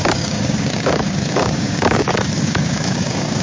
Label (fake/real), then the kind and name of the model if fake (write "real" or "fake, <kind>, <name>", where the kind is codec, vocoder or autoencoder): fake, codec, DAC